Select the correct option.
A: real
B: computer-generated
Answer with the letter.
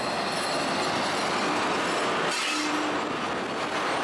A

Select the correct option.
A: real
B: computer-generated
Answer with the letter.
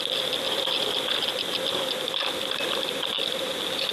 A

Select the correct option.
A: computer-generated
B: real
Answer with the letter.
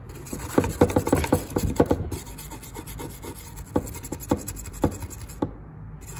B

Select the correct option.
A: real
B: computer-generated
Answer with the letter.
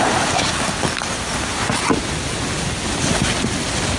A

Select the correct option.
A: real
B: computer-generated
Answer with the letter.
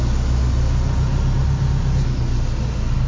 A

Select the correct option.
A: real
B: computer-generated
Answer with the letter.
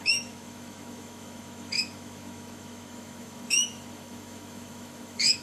B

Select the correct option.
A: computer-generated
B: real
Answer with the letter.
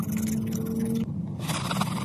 B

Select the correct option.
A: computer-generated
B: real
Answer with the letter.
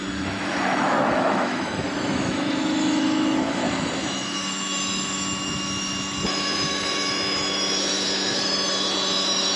A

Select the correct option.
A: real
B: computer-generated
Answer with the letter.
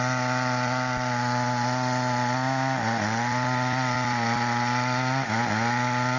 A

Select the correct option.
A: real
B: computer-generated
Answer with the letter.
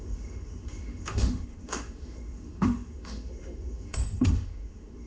B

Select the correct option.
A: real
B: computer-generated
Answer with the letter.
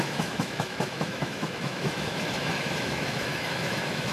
B